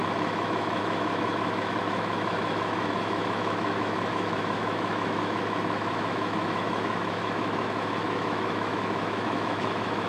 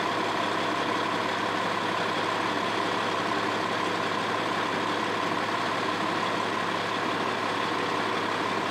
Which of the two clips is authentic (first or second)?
second